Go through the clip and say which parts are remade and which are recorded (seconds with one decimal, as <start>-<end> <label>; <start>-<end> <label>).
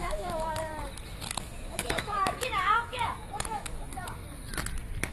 0.0-0.7 remade; 0.7-1.3 recorded; 1.3-3.9 remade; 3.9-5.1 recorded